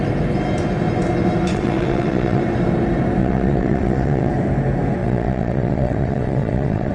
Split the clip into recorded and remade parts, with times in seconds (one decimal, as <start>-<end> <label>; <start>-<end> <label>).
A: 0.0-1.5 recorded; 1.5-2.4 remade; 2.4-3.2 recorded; 3.2-4.3 remade; 4.3-5.0 recorded; 5.0-6.9 remade